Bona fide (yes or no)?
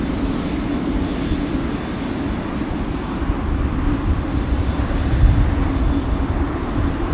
yes